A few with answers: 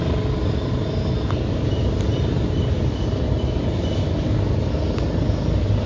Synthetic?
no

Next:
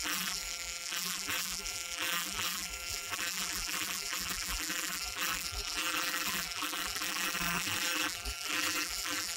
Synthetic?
yes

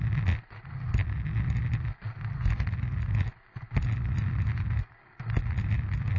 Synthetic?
no